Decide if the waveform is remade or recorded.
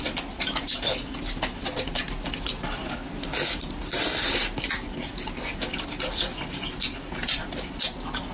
recorded